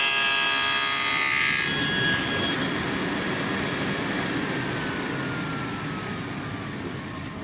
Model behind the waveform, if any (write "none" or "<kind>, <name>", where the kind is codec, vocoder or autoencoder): none